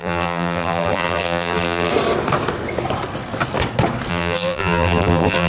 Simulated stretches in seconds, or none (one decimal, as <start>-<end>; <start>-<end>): 0.0-1.9; 4.1-5.5